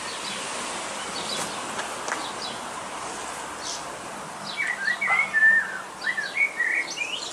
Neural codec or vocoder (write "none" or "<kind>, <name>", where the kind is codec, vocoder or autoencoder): none